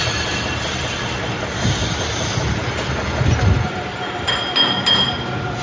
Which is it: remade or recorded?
recorded